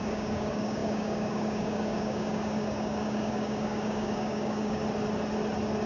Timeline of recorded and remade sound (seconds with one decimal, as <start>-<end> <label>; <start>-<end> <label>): 0.0-4.8 remade; 4.8-5.9 recorded